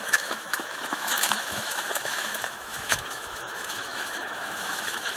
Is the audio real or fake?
fake